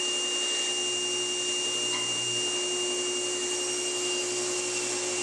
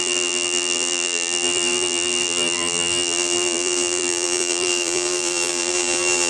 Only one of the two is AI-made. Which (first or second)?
second